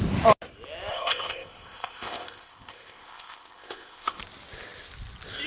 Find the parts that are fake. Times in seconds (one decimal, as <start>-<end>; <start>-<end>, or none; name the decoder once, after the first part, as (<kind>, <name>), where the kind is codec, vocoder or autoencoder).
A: 0.9-4.2 (codec, ZipCodec)